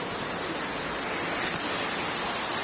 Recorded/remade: recorded